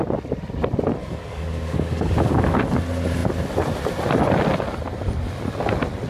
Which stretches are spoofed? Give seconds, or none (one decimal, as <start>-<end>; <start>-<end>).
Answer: 1.0-2.6